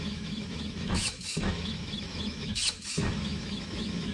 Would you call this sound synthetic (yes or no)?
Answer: yes